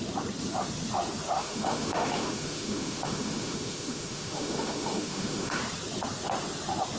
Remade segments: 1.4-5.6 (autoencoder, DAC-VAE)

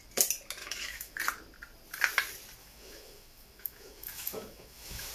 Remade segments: 0.6-1.2 (autoencoder, DAC-VAE); 2.6-5.1